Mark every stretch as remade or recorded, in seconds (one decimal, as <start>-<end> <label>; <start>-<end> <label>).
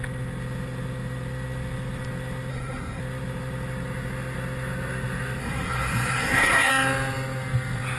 0.0-2.5 recorded; 2.5-3.0 remade; 3.0-5.4 recorded; 5.4-6.7 remade; 6.7-8.0 recorded